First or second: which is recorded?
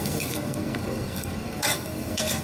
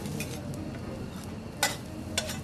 second